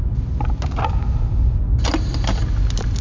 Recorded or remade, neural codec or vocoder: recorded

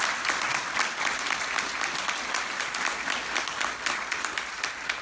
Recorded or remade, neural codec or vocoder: recorded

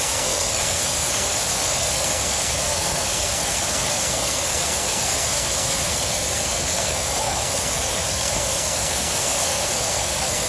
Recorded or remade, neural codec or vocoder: remade, codec, SNAC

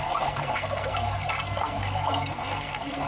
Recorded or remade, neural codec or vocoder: remade, codec, SNAC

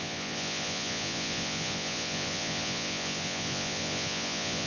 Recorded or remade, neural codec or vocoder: remade, vocoder, Vocos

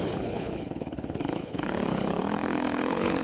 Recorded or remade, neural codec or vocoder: remade, codec, HILCodec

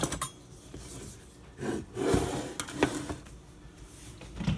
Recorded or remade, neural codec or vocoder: recorded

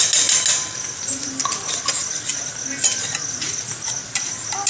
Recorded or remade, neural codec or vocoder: recorded